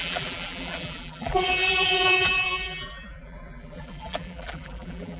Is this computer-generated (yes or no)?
yes